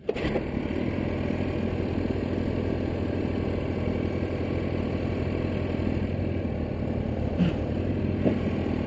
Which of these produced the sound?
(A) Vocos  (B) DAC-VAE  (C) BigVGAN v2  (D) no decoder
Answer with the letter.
D